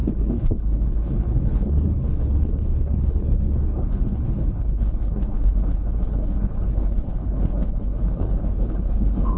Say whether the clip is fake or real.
fake